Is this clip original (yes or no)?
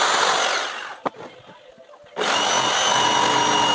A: yes